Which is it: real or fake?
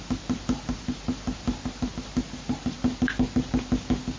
real